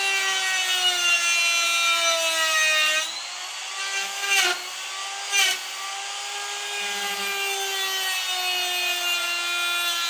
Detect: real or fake real